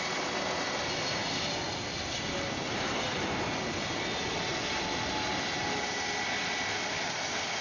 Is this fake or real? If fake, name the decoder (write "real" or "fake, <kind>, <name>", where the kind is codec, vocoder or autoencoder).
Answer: real